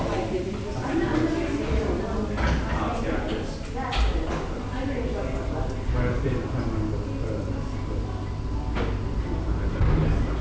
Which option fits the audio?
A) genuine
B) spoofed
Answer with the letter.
A